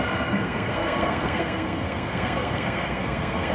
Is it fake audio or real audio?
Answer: fake